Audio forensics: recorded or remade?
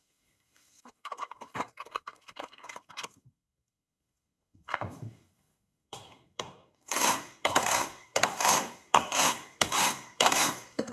remade